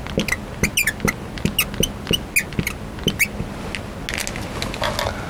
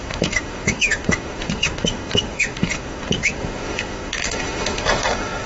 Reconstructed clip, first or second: second